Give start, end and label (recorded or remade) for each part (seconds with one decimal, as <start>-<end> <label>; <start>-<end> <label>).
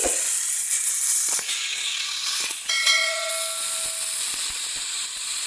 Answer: 0.0-3.3 remade; 3.3-4.2 recorded; 4.2-5.5 remade